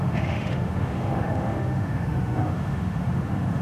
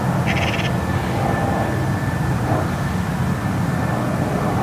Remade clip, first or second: first